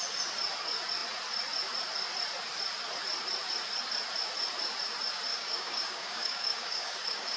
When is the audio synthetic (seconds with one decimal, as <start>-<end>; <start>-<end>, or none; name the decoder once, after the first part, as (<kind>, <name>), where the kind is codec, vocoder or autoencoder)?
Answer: 5.3-7.4 (codec, DAC)